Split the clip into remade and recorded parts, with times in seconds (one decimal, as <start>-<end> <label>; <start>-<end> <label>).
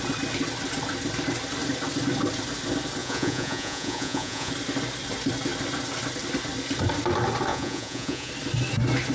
0.0-3.0 recorded; 3.0-4.5 remade; 4.5-7.5 recorded; 7.5-8.3 remade; 8.3-9.1 recorded